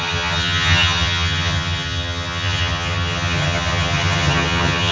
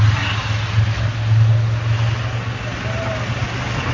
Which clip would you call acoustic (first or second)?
second